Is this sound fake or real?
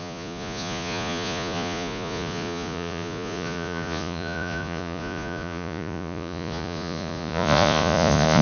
fake